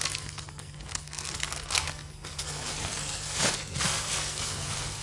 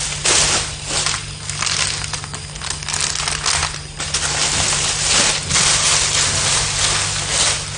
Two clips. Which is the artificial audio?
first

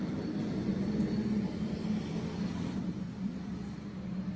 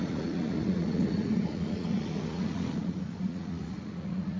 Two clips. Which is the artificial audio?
second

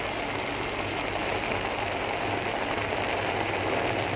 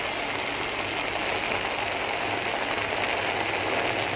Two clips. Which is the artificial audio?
first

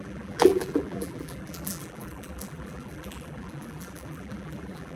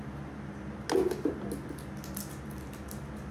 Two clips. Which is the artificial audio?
first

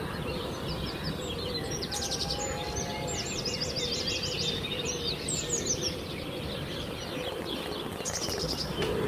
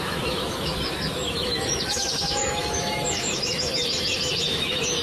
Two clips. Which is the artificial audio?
second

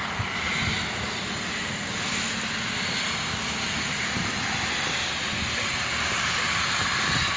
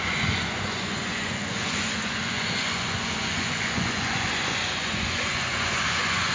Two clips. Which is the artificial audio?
second